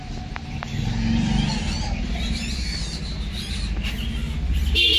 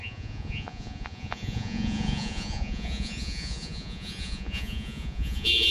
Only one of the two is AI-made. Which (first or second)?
second